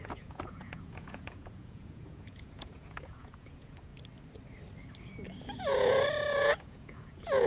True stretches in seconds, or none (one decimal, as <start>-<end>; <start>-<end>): 3.9-5.6